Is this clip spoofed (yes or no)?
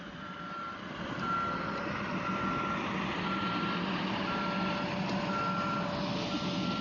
no